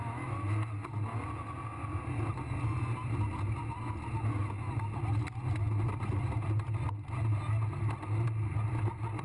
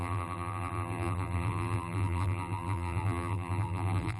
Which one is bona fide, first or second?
first